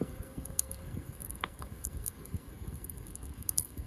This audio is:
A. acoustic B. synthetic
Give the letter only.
B